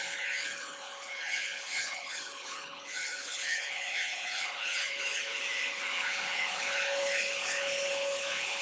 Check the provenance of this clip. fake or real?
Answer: fake